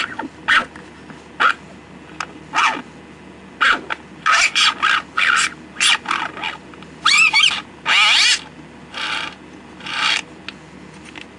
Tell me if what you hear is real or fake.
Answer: real